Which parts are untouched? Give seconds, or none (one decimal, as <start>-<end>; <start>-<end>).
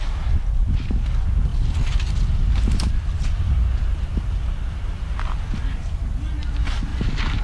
0.0-7.4